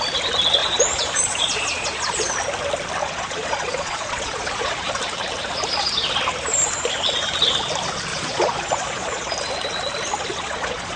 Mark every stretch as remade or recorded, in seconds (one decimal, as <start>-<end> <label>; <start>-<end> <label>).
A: 0.0-0.6 recorded; 0.6-2.3 remade; 2.3-3.0 recorded; 3.0-5.0 remade; 5.0-8.1 recorded; 8.1-9.3 remade; 9.3-10.3 recorded; 10.3-11.0 remade